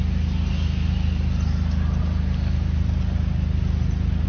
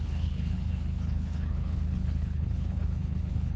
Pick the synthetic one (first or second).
second